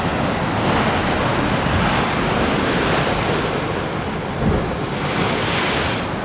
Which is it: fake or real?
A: real